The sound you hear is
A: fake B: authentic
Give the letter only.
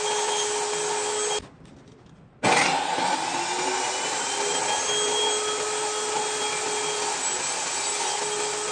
B